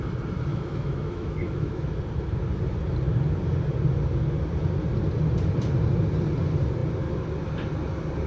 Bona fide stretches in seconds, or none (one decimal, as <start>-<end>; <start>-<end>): 0.0-0.5; 1.9-8.3